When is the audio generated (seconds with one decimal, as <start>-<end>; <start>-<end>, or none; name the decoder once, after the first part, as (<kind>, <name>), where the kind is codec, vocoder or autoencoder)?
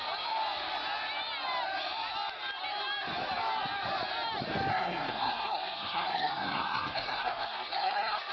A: 4.7-8.3 (codec, SNAC)